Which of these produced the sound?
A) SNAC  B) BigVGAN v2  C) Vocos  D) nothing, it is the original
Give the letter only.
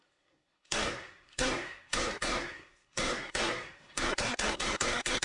A